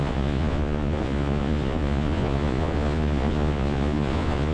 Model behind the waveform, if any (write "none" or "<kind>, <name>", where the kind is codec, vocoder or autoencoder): vocoder, Vocos